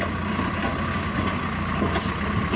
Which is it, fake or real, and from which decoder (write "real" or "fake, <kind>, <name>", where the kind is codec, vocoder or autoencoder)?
real